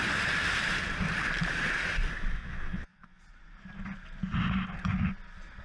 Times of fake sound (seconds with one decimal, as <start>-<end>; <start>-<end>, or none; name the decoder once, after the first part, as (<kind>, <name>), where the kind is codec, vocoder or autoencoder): 2.4-3.2 (vocoder, Vocos)